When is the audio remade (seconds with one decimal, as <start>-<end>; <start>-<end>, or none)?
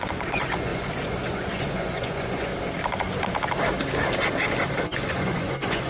0.0-2.5; 5.1-5.9